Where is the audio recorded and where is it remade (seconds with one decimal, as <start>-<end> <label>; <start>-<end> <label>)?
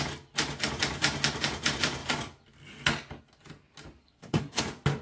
0.0-4.0 recorded; 4.0-4.6 remade; 4.6-5.0 recorded